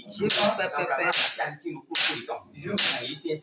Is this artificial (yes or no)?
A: no